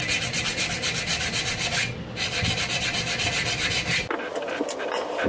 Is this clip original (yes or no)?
yes